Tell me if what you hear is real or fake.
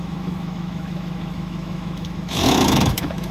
fake